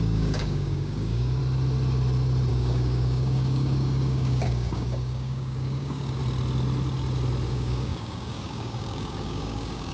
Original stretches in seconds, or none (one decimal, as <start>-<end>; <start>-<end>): 1.4-2.5; 6.2-7.5